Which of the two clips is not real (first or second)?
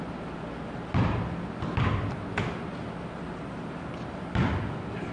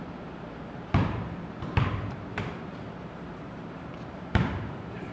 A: second